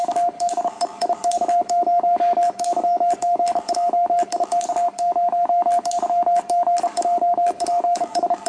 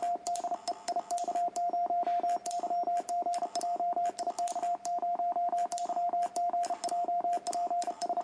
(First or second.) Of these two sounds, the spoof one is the first